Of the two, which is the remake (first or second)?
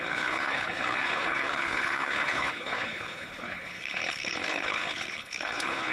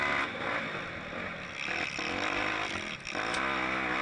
first